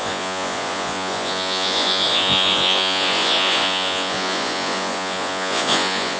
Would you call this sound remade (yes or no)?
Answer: yes